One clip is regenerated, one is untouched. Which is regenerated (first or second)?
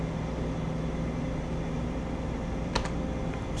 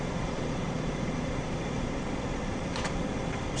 second